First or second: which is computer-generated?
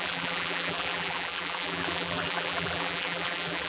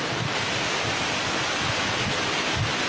first